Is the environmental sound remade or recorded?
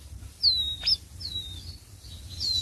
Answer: recorded